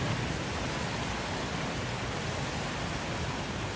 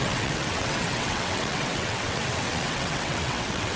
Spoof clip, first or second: second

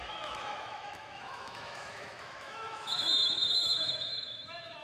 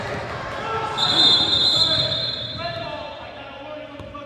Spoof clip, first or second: first